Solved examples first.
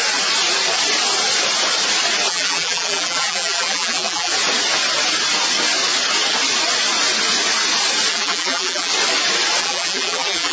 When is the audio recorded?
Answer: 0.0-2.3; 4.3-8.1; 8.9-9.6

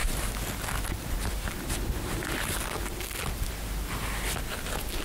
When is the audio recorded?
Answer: 0.0-5.0

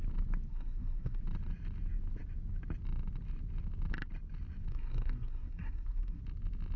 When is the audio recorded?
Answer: 0.0-0.5; 1.2-4.7; 6.2-6.8

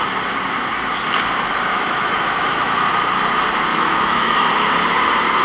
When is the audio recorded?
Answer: 0.0-1.7; 2.9-3.7; 4.5-5.4

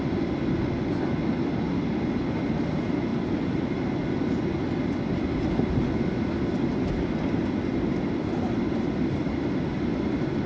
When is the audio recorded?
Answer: 0.0-10.5

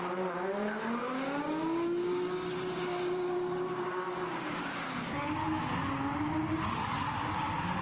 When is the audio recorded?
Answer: 0.0-1.0; 5.7-7.8

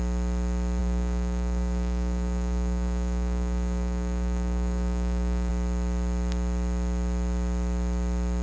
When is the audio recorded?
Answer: 0.0-0.8; 5.5-8.4